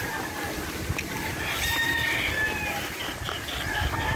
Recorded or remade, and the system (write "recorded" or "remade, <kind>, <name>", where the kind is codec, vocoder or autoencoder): recorded